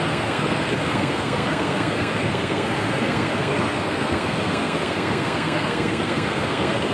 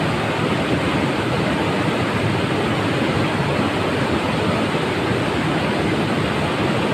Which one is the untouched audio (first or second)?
second